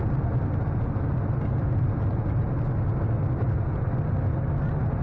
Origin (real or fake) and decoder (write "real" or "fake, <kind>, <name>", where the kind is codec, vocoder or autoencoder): real